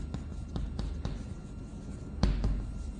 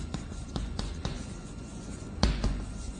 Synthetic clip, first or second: second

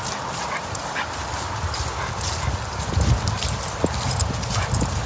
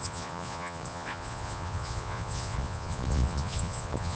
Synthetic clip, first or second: second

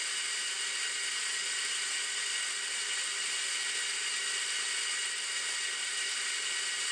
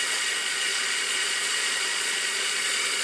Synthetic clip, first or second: second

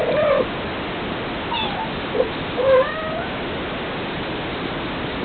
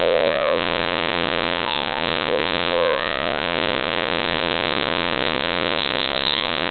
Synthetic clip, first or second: second